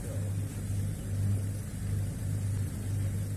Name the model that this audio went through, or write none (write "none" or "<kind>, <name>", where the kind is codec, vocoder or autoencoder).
none